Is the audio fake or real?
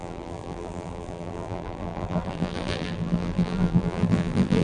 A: fake